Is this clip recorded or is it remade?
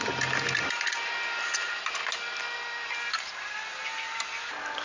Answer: recorded